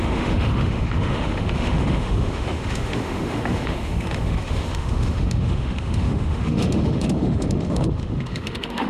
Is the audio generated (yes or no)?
yes